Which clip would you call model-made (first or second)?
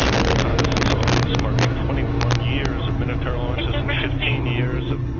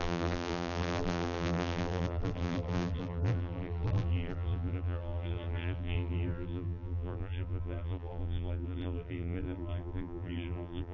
second